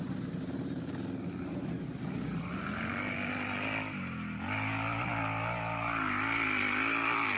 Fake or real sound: real